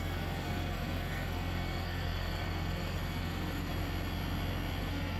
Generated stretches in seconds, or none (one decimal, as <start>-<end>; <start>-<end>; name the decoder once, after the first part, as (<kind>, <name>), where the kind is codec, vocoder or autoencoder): 0.0-3.7 (codec, SNAC); 4.8-5.2